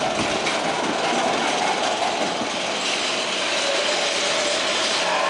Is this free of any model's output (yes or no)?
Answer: yes